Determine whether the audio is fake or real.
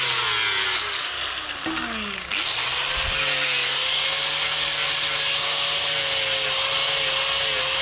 real